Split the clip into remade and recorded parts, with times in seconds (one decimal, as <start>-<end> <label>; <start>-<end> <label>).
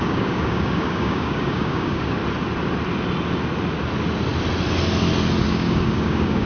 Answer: 0.0-2.2 remade; 2.2-5.5 recorded; 5.5-6.5 remade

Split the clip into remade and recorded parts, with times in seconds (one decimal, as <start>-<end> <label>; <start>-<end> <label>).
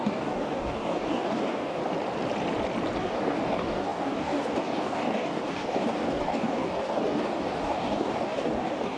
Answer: 0.0-1.8 remade; 1.8-3.0 recorded; 3.0-9.0 remade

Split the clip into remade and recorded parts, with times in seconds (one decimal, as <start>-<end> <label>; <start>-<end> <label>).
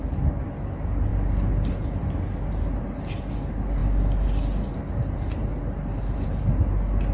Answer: 0.0-7.1 recorded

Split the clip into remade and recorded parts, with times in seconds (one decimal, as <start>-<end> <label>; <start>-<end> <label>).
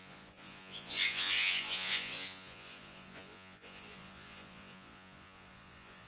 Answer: 0.0-6.1 remade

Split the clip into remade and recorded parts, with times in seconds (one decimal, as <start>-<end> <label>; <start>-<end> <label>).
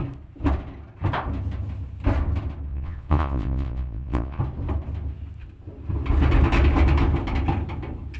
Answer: 0.0-2.7 recorded; 2.7-4.4 remade; 4.4-8.2 recorded